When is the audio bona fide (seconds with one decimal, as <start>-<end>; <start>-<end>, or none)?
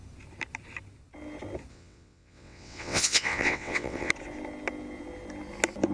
0.0-1.7; 4.1-5.9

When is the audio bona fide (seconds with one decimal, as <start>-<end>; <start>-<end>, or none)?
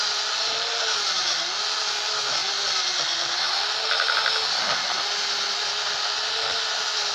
0.0-7.1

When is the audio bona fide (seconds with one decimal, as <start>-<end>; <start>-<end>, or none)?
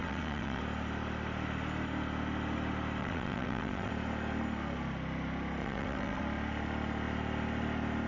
0.6-3.0; 3.9-5.6; 6.2-8.1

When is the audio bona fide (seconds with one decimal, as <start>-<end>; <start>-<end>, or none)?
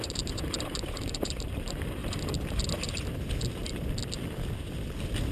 2.0-5.3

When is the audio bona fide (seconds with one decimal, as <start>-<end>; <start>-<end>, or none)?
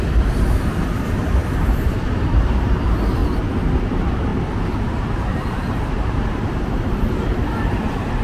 3.2-3.9; 4.3-4.9